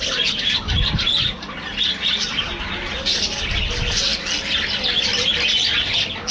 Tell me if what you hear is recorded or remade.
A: recorded